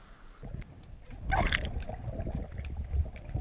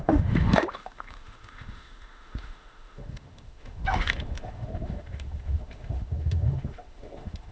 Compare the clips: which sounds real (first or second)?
first